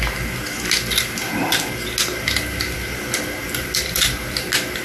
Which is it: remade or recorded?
recorded